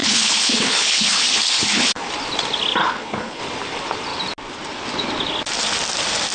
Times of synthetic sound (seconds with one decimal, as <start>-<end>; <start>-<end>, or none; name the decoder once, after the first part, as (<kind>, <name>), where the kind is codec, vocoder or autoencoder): 0.0-2.1 (codec, HILCodec); 2.8-3.4